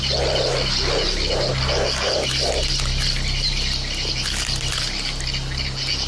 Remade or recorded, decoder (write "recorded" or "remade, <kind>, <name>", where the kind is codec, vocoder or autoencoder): recorded